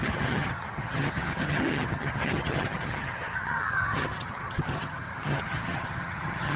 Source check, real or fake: fake